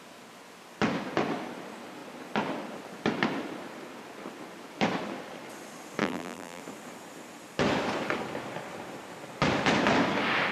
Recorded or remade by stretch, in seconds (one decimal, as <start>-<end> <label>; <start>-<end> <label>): 0.0-6.0 recorded; 6.0-6.6 remade; 6.6-10.5 recorded